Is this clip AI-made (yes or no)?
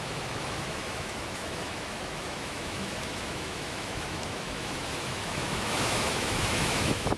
yes